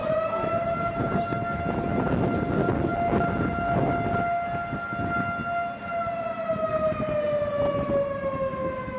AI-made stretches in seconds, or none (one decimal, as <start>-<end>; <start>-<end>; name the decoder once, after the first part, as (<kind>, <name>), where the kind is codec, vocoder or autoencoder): 0.0-1.2 (vocoder, BigVGAN v2)